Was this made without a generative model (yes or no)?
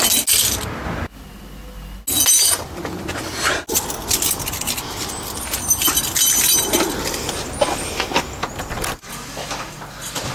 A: yes